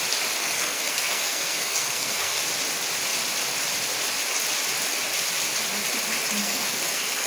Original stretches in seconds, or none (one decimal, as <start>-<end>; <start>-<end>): 0.0-0.4; 2.4-6.4